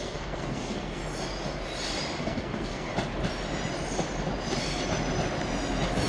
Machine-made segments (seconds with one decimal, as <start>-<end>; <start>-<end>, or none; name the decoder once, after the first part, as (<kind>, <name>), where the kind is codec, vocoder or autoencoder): 0.0-1.0 (codec, SNAC); 2.2-2.9